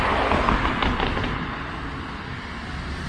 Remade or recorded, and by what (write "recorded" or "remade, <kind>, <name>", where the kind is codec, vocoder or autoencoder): recorded